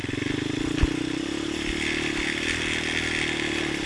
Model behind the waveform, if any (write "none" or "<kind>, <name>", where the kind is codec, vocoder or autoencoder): none